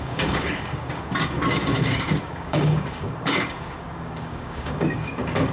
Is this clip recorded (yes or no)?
no